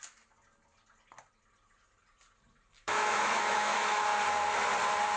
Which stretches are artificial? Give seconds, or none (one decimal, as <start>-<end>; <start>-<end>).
2.8-4.0